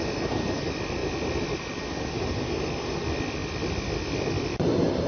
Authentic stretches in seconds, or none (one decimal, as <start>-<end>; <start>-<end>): 0.0-5.1